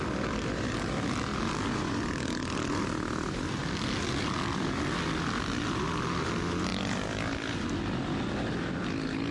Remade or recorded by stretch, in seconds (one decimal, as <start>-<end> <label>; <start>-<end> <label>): 0.0-3.6 recorded; 3.6-4.1 remade; 4.1-6.7 recorded; 6.7-7.8 remade; 7.8-9.3 recorded